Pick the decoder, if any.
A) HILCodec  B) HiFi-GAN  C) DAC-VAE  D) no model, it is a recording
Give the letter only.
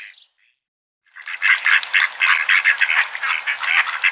D